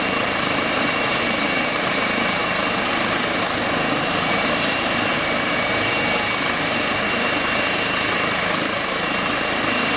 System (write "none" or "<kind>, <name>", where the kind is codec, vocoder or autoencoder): vocoder, BigVGAN v2